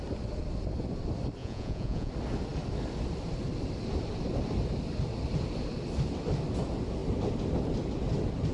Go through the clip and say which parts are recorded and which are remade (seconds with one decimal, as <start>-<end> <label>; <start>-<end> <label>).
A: 0.0-1.4 recorded; 1.4-2.1 remade; 2.1-8.5 recorded